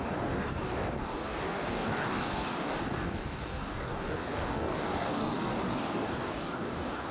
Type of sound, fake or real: fake